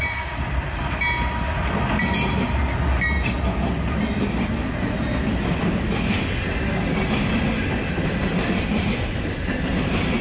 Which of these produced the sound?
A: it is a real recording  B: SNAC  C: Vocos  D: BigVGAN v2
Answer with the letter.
A